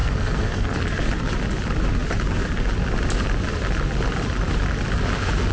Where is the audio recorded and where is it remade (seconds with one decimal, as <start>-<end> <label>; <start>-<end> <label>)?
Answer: 0.0-0.8 remade; 0.8-5.5 recorded